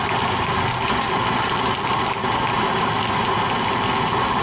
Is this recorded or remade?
recorded